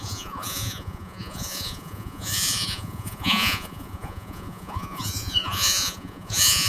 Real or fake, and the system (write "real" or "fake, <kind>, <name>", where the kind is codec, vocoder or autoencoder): fake, vocoder, Vocos